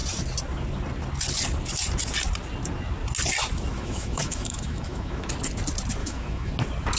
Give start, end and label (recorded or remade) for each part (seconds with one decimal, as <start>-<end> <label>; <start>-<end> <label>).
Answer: 0.0-3.7 recorded; 3.7-5.3 remade; 5.3-6.0 recorded; 6.0-6.5 remade; 6.5-7.0 recorded